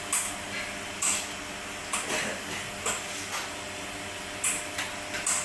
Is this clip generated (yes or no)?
no